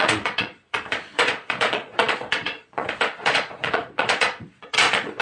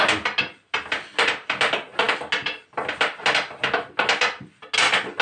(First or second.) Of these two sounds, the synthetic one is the first